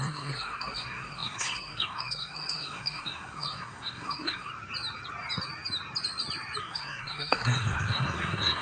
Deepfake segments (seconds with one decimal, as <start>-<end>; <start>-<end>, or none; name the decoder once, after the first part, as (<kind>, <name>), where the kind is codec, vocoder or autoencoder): 0.0-4.5 (codec, SNAC); 6.6-8.6